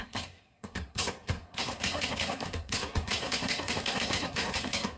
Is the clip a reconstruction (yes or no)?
yes